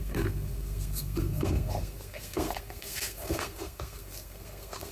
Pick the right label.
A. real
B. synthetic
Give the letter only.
B